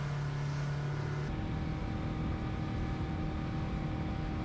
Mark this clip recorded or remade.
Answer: recorded